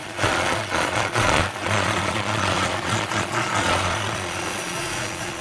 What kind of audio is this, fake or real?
fake